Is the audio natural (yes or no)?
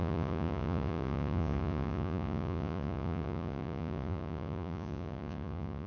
no